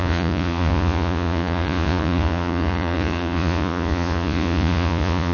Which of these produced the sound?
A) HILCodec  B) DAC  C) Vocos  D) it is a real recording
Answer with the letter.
C